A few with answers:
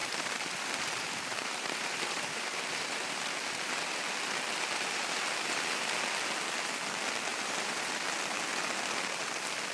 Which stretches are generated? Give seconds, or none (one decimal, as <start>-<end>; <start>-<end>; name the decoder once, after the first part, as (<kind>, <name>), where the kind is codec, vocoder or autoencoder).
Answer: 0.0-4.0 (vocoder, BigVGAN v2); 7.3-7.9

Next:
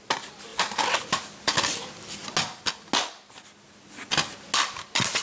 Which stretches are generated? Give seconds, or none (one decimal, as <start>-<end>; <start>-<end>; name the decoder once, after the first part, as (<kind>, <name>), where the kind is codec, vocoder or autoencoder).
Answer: none

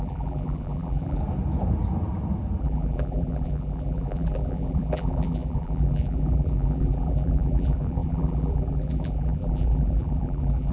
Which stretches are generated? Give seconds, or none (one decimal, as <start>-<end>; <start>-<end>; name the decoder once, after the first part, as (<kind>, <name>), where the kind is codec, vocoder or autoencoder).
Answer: 0.0-1.2 (vocoder, BigVGAN v2); 2.6-10.7

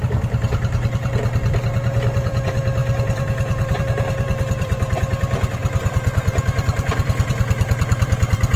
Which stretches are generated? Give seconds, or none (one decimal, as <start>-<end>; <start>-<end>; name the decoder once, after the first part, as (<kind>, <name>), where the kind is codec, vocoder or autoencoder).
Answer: 0.0-8.6 (vocoder, BigVGAN v2)

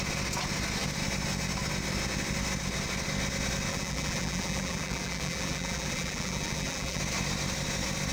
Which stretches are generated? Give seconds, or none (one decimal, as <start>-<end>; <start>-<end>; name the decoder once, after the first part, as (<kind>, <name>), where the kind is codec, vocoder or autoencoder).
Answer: 3.7-7.0 (vocoder, BigVGAN v2)

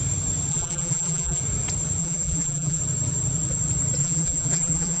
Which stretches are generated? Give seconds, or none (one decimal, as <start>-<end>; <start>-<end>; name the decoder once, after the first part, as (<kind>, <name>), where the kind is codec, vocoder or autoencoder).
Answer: 0.5-1.4 (vocoder, BigVGAN v2); 2.0-2.8; 4.0-5.0